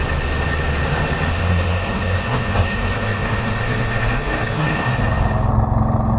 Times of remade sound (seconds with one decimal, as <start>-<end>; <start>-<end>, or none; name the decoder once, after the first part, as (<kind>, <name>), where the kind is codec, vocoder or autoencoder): 1.3-5.0 (codec, SNAC)